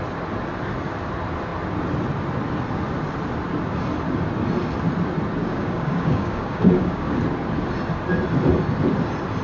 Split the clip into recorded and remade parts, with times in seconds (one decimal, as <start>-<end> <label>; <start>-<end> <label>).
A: 0.0-5.4 recorded; 5.4-7.2 remade; 7.2-9.4 recorded